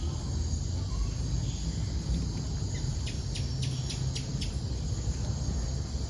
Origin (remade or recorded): recorded